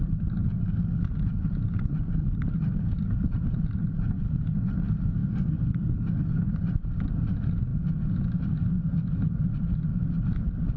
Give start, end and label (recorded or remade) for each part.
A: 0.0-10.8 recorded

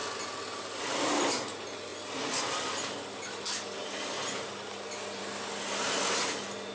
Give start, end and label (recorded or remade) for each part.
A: 0.0-6.7 recorded